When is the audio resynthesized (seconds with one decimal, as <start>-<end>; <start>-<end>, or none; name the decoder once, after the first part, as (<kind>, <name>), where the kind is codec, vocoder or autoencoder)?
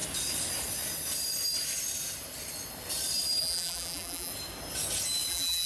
3.4-4.3 (vocoder, BigVGAN v2); 5.3-5.7